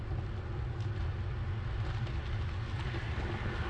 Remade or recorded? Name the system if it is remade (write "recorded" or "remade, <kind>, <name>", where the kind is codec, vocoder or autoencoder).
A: recorded